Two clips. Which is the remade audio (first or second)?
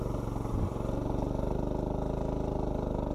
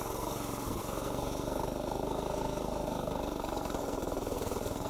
second